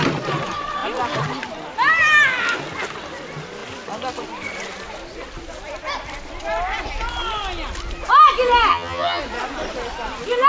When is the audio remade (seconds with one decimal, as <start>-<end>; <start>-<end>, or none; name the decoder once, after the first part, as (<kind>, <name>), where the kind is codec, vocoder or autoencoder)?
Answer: 8.7-9.2 (vocoder, HiFi-GAN)